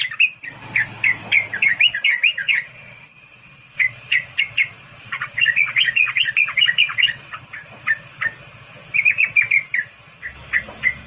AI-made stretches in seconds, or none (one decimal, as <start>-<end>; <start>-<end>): 2.4-4.4; 5.0-7.3